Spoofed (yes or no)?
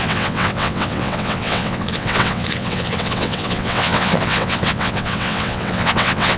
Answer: yes